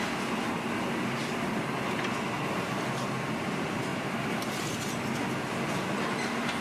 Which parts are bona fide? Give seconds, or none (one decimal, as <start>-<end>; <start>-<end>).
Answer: 0.0-6.6